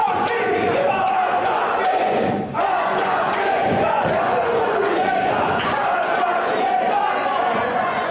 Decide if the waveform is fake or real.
fake